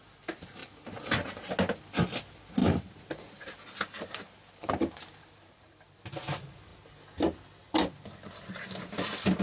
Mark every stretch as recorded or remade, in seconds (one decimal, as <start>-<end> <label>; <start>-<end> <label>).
0.0-0.6 recorded; 0.6-1.5 remade; 1.5-2.6 recorded; 2.6-6.0 remade; 6.0-9.4 recorded